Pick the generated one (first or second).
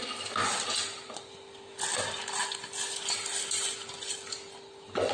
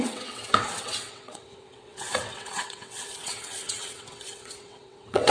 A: second